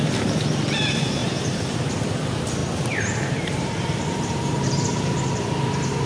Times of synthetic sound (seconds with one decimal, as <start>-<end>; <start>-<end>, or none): 1.2-1.9; 2.6-4.8